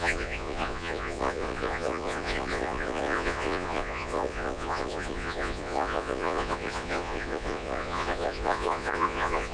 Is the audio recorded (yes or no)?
no